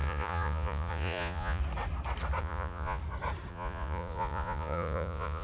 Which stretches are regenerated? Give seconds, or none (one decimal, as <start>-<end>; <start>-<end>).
0.0-1.6; 2.4-3.0; 3.5-5.4